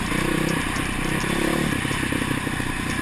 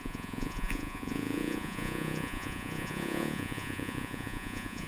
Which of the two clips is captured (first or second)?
first